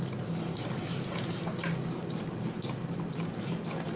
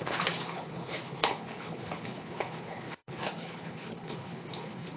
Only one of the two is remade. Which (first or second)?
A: second